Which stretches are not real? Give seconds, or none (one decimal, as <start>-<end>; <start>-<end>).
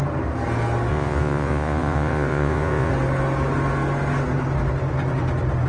0.9-2.9